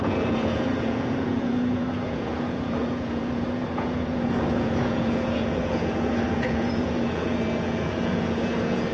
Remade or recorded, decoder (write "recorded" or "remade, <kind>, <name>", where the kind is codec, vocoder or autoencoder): remade, vocoder, Vocos